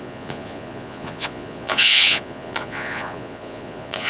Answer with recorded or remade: remade